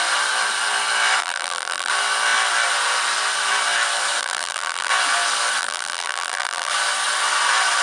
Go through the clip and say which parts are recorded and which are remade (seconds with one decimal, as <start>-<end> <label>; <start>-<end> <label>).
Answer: 0.0-1.2 recorded; 1.2-1.9 remade; 1.9-4.2 recorded; 4.2-4.9 remade; 4.9-5.6 recorded; 5.6-6.7 remade; 6.7-7.8 recorded